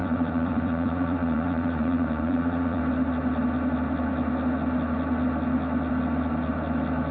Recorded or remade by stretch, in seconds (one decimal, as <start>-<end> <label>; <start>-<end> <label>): 0.0-2.8 remade; 2.8-7.1 recorded